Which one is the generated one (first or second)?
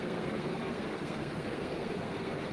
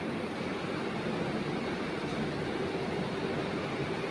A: first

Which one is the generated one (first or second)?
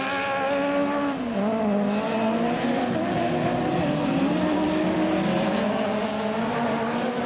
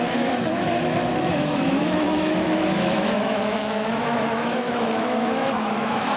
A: second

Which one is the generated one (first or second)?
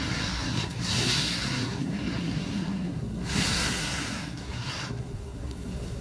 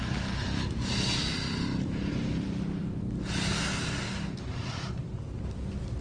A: first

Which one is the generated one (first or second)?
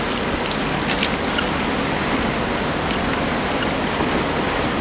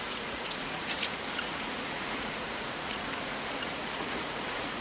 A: second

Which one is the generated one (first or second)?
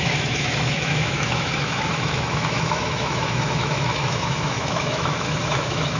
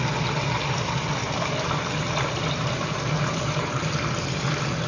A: first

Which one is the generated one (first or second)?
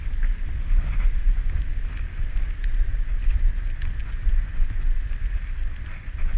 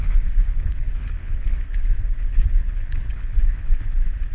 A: second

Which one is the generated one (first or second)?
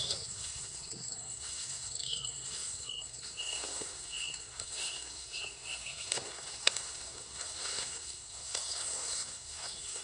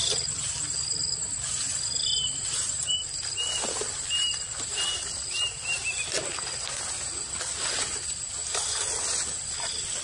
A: first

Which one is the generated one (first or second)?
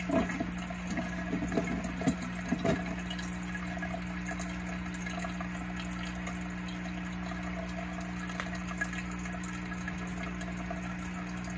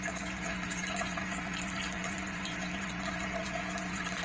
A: second